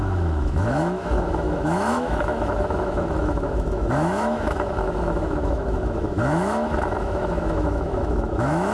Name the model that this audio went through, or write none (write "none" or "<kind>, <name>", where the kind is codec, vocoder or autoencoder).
autoencoder, DAC-VAE